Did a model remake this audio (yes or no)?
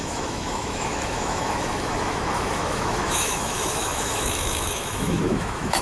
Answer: yes